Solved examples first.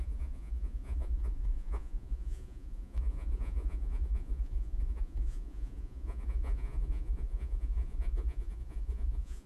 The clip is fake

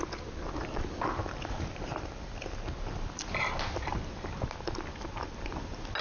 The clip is real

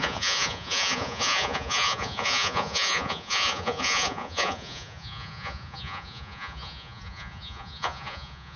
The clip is fake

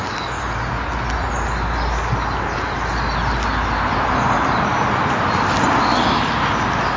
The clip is real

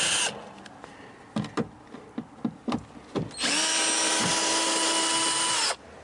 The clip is real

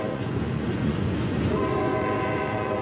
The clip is fake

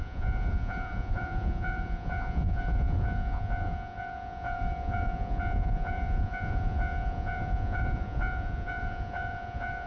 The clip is fake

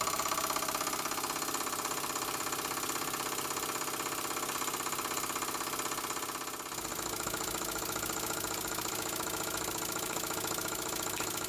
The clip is real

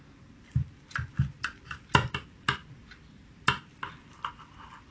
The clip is real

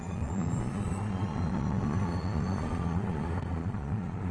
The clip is fake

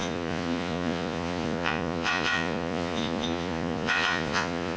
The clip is fake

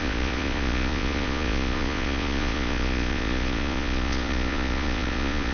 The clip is fake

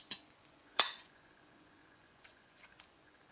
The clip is fake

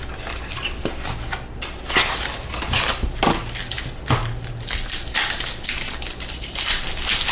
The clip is real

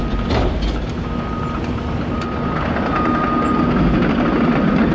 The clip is real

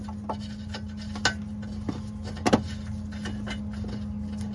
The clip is real